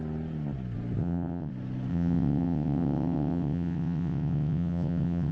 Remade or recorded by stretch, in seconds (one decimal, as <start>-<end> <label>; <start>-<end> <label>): 0.0-1.0 recorded; 1.0-1.5 remade; 1.5-1.9 recorded; 1.9-5.3 remade